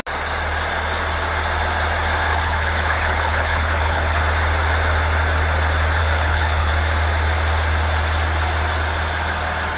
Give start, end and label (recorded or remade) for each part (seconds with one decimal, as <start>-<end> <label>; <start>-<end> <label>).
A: 0.0-2.3 recorded; 2.3-4.2 remade; 4.2-6.0 recorded; 6.0-6.7 remade; 6.7-9.8 recorded